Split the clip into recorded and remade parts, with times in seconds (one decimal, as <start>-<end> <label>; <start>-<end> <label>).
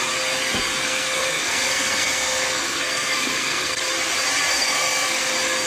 0.0-0.8 recorded; 0.8-3.8 remade; 3.8-4.5 recorded; 4.5-5.3 remade; 5.3-5.7 recorded